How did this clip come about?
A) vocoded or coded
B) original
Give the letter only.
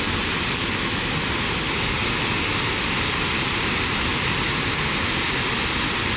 B